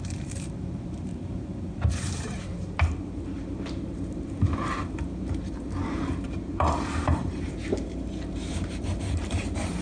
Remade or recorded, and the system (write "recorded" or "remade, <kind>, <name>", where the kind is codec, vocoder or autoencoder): remade, vocoder, BigVGAN v2